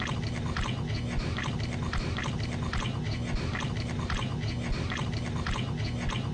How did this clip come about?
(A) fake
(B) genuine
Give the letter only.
B